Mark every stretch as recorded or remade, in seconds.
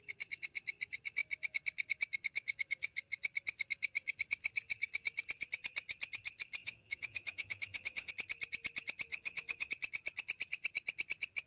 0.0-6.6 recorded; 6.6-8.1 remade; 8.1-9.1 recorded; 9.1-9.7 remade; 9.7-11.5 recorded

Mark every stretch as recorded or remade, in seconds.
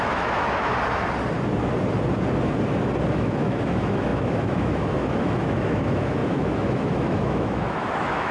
0.0-0.7 remade; 0.7-3.1 recorded; 3.1-8.3 remade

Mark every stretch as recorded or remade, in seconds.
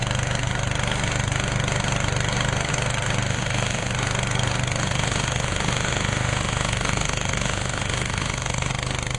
0.0-3.3 recorded; 3.3-3.9 remade; 3.9-4.8 recorded; 4.8-8.7 remade; 8.7-9.2 recorded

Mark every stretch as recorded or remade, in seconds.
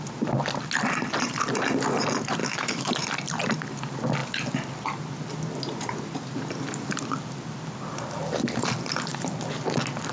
0.0-2.4 recorded; 2.4-2.9 remade; 2.9-10.1 recorded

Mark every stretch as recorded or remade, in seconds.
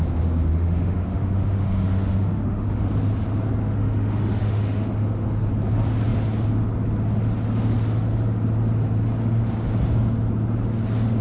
0.0-0.5 recorded; 0.5-2.9 remade; 2.9-3.6 recorded; 3.6-5.5 remade; 5.5-11.2 recorded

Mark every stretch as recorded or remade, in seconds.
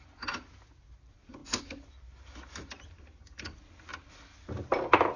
0.0-5.2 recorded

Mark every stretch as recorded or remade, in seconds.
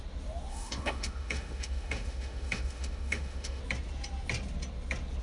0.0-0.5 recorded; 0.5-3.6 remade; 3.6-5.2 recorded